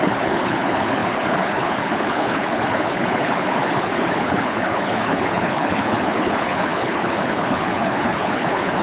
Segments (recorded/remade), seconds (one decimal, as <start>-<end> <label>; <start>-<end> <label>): 0.0-8.8 remade

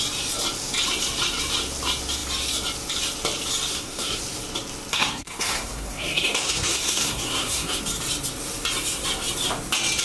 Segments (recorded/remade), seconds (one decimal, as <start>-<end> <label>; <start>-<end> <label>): 0.0-3.7 recorded; 3.7-4.2 remade; 4.2-4.9 recorded; 4.9-7.8 remade; 7.8-10.0 recorded

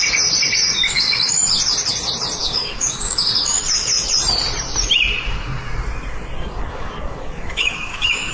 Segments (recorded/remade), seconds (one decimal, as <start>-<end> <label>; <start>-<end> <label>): 0.0-0.7 recorded; 0.7-1.4 remade; 1.4-2.4 recorded; 2.4-3.6 remade; 3.6-6.4 recorded; 6.4-8.3 remade

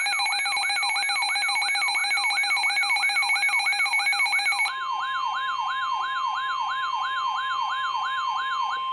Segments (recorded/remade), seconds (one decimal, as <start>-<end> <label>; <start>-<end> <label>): 0.0-8.9 recorded

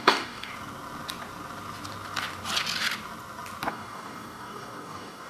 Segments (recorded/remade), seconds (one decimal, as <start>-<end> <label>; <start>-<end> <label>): 0.0-0.5 remade; 0.5-3.7 recorded; 3.7-5.3 remade